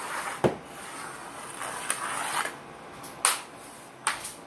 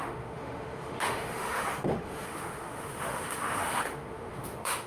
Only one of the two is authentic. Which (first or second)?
first